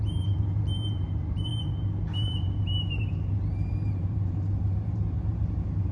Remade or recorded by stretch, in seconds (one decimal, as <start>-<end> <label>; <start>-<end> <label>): 0.0-5.9 remade